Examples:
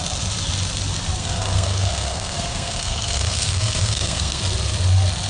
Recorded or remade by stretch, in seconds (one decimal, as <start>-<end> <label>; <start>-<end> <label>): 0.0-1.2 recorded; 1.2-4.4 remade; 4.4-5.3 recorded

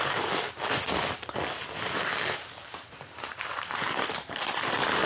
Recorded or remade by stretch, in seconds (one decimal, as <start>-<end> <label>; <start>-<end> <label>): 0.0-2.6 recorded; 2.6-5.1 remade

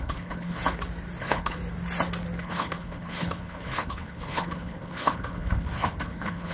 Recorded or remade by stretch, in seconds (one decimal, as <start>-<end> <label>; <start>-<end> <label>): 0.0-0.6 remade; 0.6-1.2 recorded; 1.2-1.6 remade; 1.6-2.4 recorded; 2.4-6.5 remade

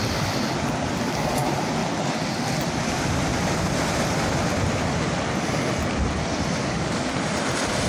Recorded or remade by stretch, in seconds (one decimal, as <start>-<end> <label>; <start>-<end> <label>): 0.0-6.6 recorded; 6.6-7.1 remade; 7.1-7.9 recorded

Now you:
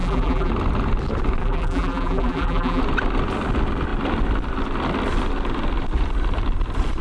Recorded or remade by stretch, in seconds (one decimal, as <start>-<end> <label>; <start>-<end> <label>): 0.0-0.5 remade; 0.5-1.4 recorded; 1.4-2.8 remade; 2.8-7.0 recorded

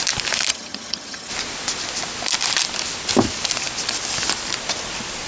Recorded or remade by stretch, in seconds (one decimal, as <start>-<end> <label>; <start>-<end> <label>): 0.0-0.5 recorded; 0.5-1.3 remade; 1.3-5.3 recorded